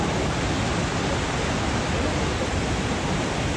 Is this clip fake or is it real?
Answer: real